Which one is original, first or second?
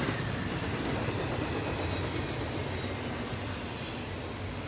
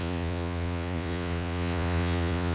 first